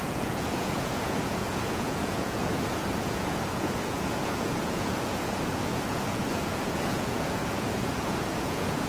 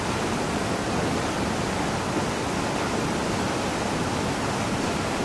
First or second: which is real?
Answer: second